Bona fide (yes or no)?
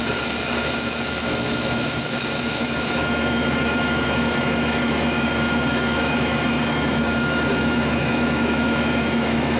no